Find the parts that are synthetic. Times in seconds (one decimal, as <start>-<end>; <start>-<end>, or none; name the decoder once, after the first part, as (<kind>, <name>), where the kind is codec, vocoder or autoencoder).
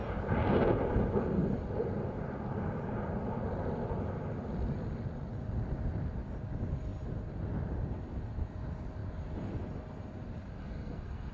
10.6-11.3 (codec, SNAC)